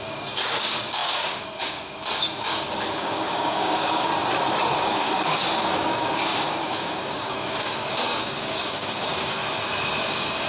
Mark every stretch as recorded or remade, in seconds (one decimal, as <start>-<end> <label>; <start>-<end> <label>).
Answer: 0.0-4.1 remade; 4.1-4.8 recorded; 4.8-9.4 remade; 9.4-10.1 recorded; 10.1-10.5 remade